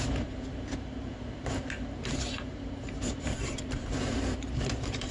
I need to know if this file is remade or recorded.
remade